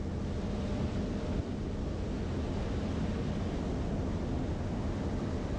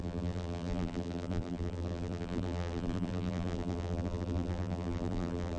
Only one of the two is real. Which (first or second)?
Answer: first